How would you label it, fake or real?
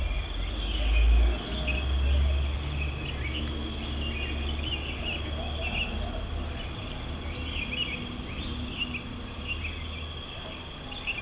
real